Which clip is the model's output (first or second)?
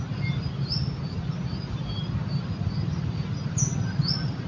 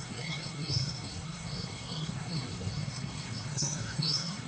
second